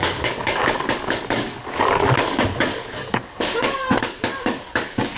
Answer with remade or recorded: remade